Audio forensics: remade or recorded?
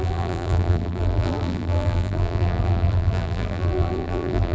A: remade